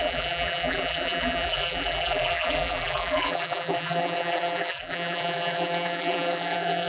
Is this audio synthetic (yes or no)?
yes